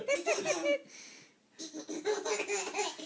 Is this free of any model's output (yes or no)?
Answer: yes